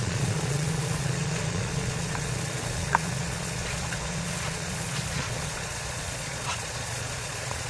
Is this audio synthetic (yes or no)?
yes